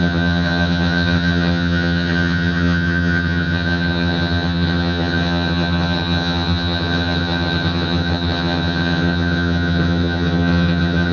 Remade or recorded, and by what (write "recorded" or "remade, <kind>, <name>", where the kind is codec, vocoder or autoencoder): remade, vocoder, HiFi-GAN